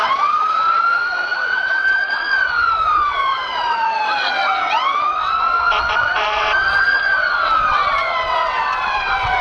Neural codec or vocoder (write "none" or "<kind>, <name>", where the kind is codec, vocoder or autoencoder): vocoder, WaveNeXt